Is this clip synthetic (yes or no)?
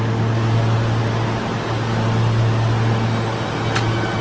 no